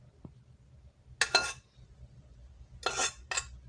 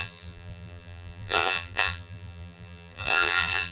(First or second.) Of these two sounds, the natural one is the first